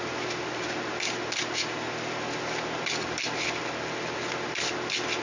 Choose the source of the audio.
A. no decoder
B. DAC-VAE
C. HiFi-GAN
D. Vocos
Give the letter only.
A